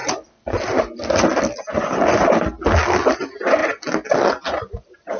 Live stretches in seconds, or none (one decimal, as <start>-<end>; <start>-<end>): 0.0-3.1; 3.6-4.3